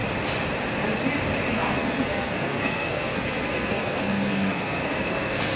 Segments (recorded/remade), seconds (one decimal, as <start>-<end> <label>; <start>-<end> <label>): 0.0-1.5 recorded; 1.5-5.6 remade